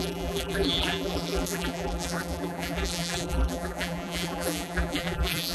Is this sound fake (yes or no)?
yes